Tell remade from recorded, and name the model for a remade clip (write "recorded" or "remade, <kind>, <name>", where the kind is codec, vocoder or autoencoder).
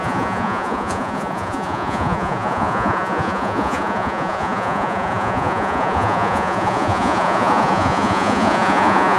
remade, vocoder, Vocos